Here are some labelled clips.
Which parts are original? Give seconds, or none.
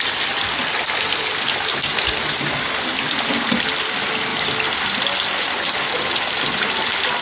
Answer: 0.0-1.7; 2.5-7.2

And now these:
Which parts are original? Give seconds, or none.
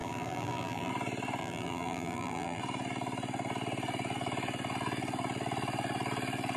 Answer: 0.9-1.4; 2.6-6.6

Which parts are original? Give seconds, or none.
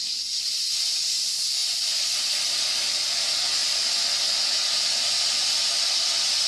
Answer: 0.0-6.5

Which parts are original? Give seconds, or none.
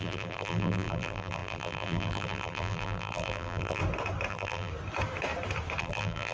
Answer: 3.8-4.3; 4.7-5.8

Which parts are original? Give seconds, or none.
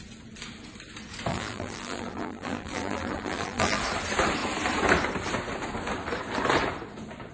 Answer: 0.0-1.3; 3.8-7.3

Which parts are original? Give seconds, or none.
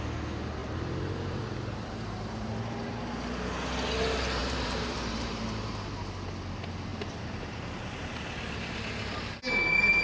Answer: 0.0-0.6; 2.5-4.4; 5.7-6.9; 7.8-10.0